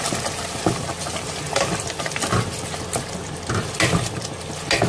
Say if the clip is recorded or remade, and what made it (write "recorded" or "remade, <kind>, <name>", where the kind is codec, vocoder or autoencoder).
recorded